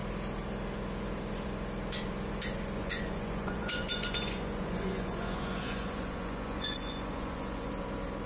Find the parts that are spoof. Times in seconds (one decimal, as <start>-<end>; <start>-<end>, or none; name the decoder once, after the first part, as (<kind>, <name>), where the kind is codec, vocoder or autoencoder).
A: 2.8-7.7 (vocoder, Vocos)